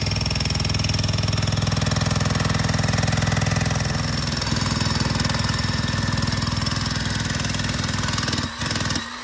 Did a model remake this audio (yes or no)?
no